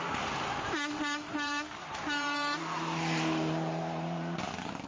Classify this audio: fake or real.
fake